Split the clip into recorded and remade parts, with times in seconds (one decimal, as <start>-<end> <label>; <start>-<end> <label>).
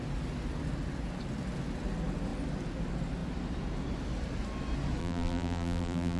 0.0-5.0 recorded; 5.0-6.2 remade